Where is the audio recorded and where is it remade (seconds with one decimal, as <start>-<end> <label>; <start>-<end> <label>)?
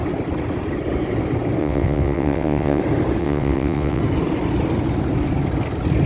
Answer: 0.0-1.6 recorded; 1.6-2.8 remade; 2.8-3.2 recorded; 3.2-4.0 remade; 4.0-6.1 recorded